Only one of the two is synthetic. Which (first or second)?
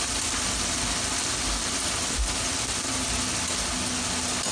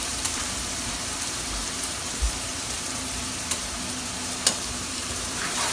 second